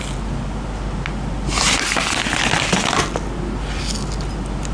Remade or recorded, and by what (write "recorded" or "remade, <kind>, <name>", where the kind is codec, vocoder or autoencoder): recorded